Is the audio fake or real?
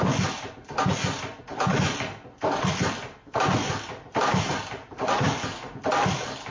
real